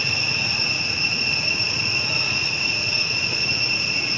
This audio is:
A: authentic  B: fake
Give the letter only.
B